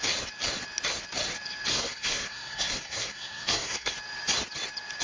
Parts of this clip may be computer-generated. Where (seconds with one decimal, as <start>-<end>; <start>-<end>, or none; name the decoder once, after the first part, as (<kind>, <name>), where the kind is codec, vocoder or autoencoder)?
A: 1.7-3.9 (codec, SNAC)